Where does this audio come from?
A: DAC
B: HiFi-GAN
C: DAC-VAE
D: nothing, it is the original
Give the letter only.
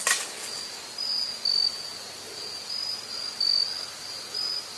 D